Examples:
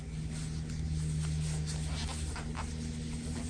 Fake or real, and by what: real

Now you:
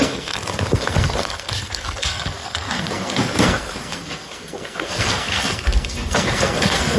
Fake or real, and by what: fake, codec, SNAC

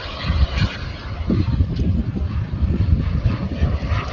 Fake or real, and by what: real